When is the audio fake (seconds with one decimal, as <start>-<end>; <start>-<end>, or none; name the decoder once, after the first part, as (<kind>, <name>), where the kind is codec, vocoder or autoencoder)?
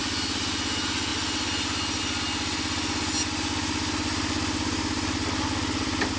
none